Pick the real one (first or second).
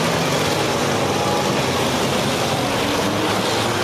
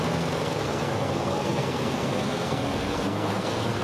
first